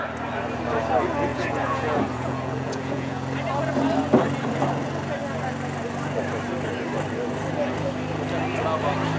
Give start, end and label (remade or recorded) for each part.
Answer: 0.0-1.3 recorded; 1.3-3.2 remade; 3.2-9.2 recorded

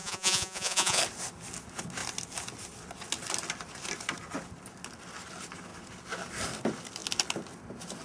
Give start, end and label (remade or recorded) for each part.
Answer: 0.0-1.0 remade; 1.0-8.0 recorded